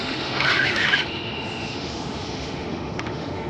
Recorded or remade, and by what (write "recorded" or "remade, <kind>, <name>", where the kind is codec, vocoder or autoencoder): remade, autoencoder, DAC-VAE